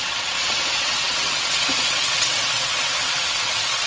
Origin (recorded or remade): remade